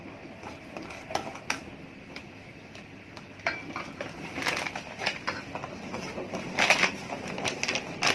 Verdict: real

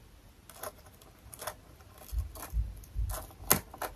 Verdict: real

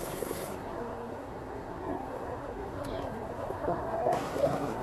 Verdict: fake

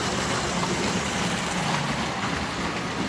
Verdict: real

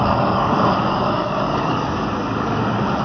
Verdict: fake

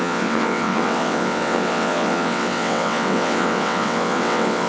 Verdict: fake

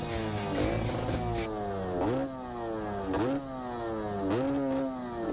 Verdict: real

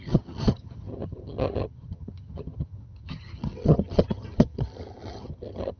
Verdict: fake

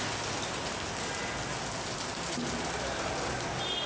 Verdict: real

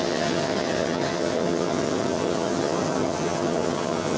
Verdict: fake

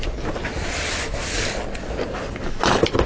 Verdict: real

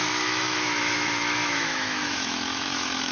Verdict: fake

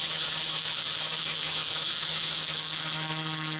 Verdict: fake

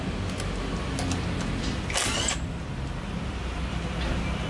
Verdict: real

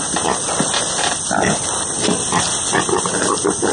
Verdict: real